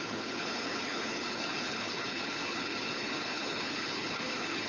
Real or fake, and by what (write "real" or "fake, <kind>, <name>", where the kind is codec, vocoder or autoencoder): fake, codec, HILCodec